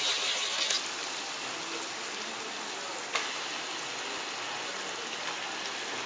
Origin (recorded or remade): recorded